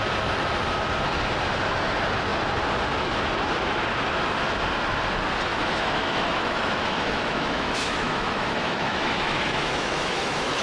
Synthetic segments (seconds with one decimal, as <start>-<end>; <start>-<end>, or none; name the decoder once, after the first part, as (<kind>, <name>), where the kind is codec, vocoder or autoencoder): 5.5-10.6 (autoencoder, DAC-VAE)

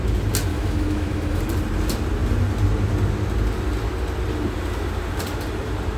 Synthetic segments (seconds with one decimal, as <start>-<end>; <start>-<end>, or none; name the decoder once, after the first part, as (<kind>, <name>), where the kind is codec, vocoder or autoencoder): 0.5-1.4 (autoencoder, DAC-VAE)

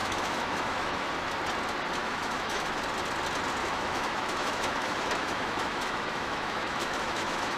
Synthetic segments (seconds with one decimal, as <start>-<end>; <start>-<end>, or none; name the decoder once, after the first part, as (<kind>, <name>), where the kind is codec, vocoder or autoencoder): 0.0-1.1 (autoencoder, DAC-VAE); 2.0-2.8; 3.6-7.6

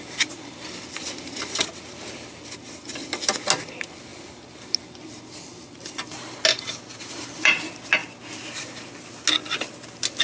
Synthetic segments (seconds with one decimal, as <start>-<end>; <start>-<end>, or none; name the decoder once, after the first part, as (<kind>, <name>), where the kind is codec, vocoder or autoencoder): none

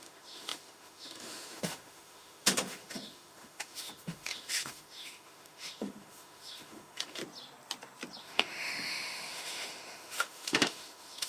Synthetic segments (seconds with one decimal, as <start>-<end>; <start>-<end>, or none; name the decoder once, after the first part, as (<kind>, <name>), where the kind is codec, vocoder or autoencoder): 0.0-7.2 (autoencoder, DAC-VAE); 8.2-11.3

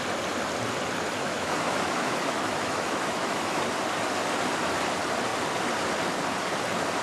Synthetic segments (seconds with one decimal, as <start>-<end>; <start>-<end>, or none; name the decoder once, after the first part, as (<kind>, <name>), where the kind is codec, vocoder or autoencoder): 1.2-3.6 (autoencoder, DAC-VAE)

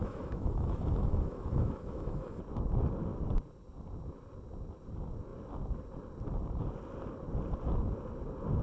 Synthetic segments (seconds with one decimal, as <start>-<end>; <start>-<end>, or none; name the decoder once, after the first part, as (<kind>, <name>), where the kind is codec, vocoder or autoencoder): 0.0-2.4 (autoencoder, DAC-VAE)

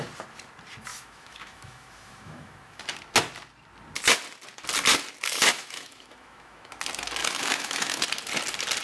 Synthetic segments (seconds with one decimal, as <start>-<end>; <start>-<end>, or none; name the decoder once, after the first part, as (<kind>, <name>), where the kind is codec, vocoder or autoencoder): 0.9-2.8 (autoencoder, DAC-VAE); 5.5-6.7; 7.2-8.0